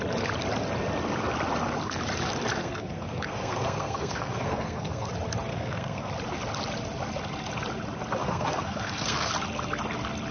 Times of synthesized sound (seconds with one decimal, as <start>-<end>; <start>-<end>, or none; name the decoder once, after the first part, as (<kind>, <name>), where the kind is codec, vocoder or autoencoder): 2.6-5.1 (codec, SNAC); 5.5-6.1; 8.2-9.3